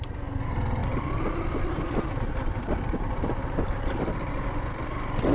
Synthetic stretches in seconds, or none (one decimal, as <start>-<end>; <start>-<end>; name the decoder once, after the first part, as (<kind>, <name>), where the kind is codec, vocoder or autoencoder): none

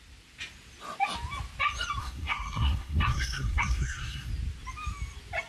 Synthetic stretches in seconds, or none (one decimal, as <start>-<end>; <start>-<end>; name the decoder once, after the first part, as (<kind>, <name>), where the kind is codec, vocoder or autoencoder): 2.0-4.3 (codec, SNAC)